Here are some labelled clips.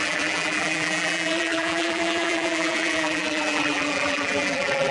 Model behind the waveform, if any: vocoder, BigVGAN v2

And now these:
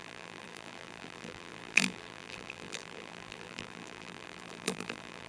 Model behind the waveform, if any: vocoder, BigVGAN v2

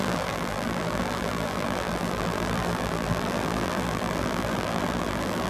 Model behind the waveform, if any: vocoder, BigVGAN v2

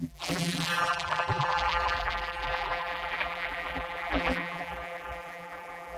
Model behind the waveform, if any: vocoder, BigVGAN v2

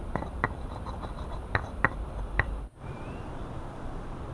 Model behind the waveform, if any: vocoder, BigVGAN v2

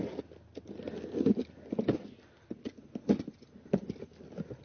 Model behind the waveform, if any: none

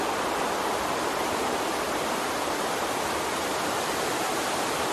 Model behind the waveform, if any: none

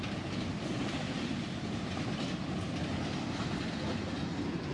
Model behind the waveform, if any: none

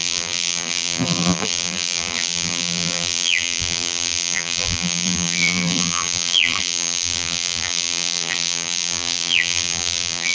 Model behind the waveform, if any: vocoder, BigVGAN v2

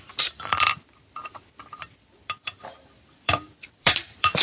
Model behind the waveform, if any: vocoder, BigVGAN v2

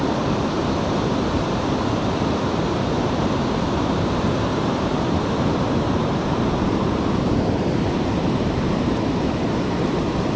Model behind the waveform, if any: vocoder, BigVGAN v2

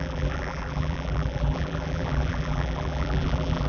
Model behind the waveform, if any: vocoder, BigVGAN v2